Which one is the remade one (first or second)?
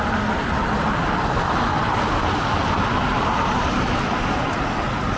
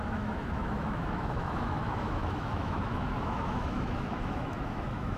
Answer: second